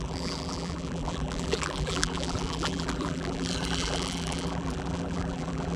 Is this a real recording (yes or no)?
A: no